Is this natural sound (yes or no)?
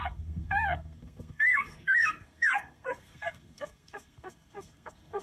no